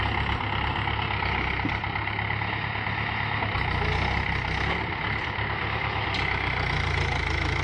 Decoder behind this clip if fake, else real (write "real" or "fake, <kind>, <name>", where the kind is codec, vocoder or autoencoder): real